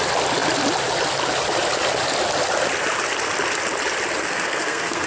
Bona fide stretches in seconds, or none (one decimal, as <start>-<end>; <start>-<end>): 0.0-4.2

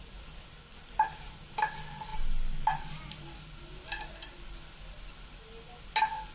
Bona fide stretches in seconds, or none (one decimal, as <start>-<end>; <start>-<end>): 0.0-6.3

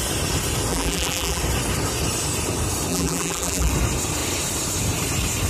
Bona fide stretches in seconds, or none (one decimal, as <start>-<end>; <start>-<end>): 0.0-0.7; 1.4-2.9; 3.7-5.5

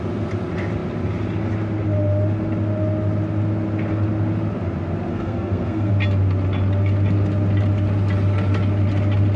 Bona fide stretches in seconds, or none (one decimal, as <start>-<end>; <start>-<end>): 0.0-5.1; 5.9-9.4

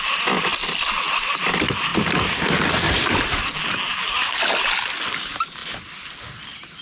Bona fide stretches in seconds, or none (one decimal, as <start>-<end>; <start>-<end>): 0.0-6.8

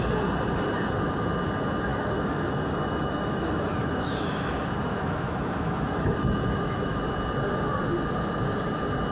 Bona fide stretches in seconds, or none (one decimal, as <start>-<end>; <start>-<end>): 0.0-1.9; 7.0-9.1